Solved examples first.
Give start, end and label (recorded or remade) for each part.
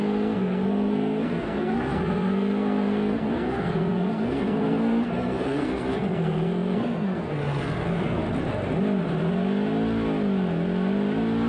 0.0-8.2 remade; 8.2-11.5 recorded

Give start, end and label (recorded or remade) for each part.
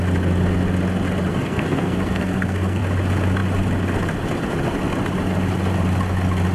0.0-1.3 recorded; 1.3-2.8 remade; 2.8-6.5 recorded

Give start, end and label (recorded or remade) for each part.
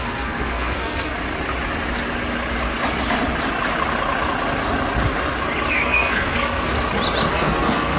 0.0-1.1 remade; 1.1-5.7 recorded; 5.7-6.7 remade; 6.7-7.3 recorded; 7.3-8.0 remade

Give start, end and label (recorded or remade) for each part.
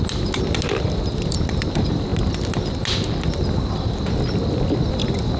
0.0-5.4 recorded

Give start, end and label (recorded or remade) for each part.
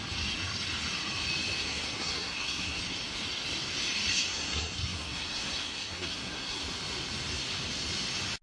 0.0-1.6 recorded; 1.6-2.8 remade; 2.8-4.1 recorded; 4.1-6.6 remade; 6.6-8.4 recorded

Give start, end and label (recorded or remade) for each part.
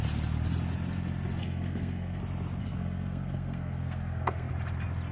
0.0-1.4 recorded; 1.4-2.2 remade; 2.2-2.6 recorded; 2.6-4.5 remade; 4.5-5.1 recorded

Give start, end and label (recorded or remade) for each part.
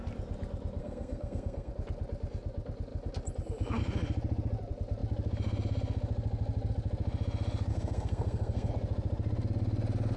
0.0-0.8 recorded; 0.8-1.7 remade; 1.7-7.7 recorded; 7.7-8.7 remade; 8.7-10.2 recorded